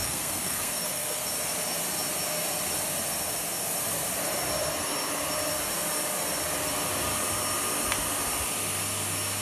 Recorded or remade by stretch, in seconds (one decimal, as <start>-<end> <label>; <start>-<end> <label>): 0.0-1.3 remade; 1.3-9.4 recorded